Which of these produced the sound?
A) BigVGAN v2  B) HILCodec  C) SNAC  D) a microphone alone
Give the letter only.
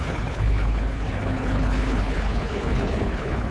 B